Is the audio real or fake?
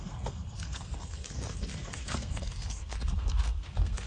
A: fake